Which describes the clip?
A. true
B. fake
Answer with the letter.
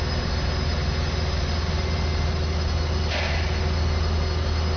A